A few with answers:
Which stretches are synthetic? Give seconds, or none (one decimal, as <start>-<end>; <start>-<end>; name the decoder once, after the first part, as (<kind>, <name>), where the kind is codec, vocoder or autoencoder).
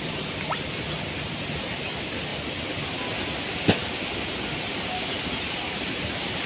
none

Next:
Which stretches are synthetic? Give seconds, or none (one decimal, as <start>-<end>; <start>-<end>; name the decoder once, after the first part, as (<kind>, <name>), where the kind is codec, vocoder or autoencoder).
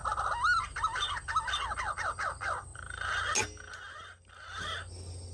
none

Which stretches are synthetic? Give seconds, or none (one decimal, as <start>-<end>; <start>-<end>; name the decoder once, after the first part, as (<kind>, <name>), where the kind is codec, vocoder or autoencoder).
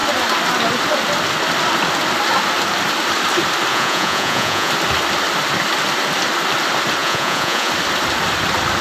3.7-4.7 (vocoder, Vocos); 7.0-7.7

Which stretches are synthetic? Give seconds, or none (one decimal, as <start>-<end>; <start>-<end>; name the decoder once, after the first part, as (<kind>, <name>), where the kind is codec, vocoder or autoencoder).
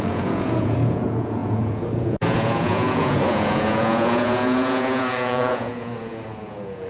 0.0-6.9 (vocoder, Vocos)